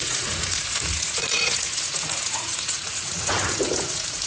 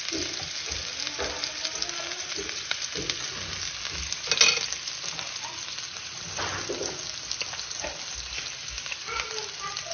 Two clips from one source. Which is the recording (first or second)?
second